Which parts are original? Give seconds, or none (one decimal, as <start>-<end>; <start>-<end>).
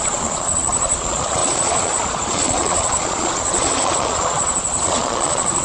none